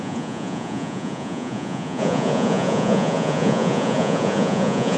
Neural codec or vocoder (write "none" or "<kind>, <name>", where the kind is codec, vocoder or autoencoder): vocoder, Vocos